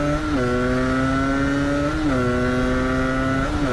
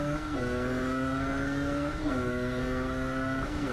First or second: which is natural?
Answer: first